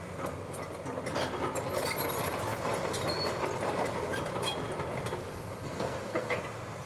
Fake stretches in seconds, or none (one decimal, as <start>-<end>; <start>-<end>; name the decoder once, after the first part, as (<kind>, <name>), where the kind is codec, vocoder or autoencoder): 5.3-6.4 (codec, SNAC)